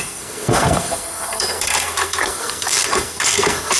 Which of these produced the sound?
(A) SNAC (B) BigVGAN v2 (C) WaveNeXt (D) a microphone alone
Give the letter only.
A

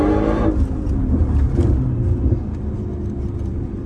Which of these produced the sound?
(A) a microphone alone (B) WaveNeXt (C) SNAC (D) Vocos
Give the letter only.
A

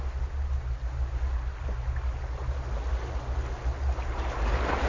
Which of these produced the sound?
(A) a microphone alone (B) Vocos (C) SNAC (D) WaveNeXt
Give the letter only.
A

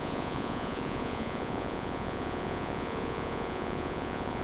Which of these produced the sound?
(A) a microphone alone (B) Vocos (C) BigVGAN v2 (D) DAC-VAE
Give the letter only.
B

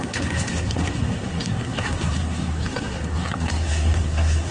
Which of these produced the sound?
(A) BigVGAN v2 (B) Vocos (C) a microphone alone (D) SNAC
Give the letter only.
D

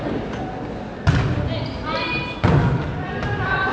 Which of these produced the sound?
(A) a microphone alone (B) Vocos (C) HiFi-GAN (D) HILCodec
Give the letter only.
A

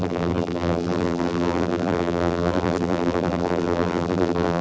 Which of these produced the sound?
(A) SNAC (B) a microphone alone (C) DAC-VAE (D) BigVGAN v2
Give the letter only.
D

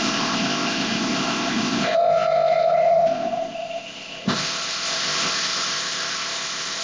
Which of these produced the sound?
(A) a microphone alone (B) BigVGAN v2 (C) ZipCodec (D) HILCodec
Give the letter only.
C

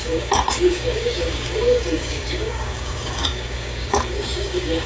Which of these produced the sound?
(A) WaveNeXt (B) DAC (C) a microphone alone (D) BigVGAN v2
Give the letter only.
B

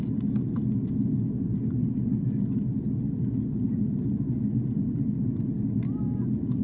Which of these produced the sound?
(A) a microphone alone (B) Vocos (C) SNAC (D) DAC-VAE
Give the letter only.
A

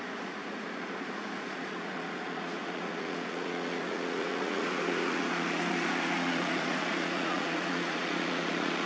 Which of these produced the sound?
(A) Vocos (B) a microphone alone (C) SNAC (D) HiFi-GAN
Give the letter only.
A